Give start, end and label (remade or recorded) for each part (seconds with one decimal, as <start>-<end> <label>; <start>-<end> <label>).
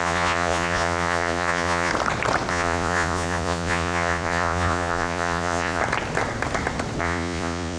0.0-1.9 remade; 1.9-2.5 recorded; 2.5-5.8 remade; 5.8-7.0 recorded; 7.0-7.8 remade